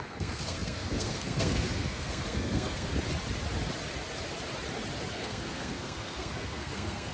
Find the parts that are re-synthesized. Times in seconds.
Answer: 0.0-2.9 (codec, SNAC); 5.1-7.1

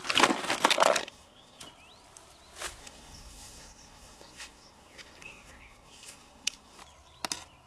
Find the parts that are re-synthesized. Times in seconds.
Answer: 1.0-1.6 (codec, SNAC); 2.8-6.8

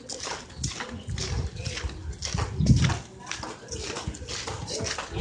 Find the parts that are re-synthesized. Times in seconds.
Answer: none

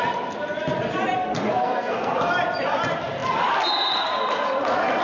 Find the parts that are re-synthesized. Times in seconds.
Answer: 1.2-2.2 (codec, SNAC)

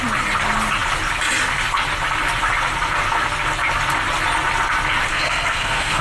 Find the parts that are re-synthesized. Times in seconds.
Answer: 5.1-6.0 (codec, SNAC)